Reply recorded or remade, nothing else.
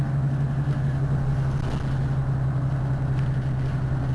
recorded